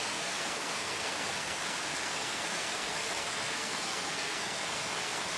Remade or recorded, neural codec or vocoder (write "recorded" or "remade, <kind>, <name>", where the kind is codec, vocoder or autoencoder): remade, codec, SNAC